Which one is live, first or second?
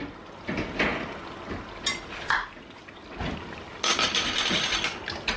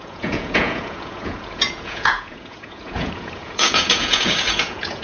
first